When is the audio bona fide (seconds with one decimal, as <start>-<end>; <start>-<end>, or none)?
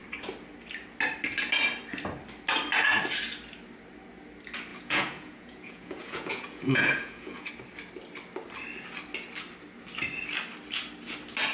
0.0-4.7; 7.5-11.5